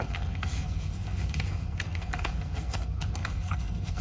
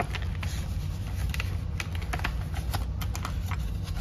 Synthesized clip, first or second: first